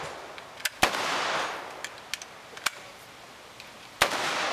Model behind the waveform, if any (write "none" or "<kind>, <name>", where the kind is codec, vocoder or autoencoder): none